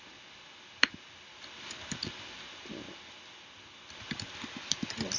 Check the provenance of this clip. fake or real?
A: real